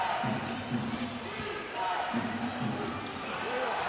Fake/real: real